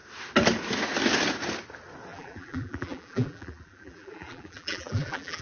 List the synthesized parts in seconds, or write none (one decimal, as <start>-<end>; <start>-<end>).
2.1-5.4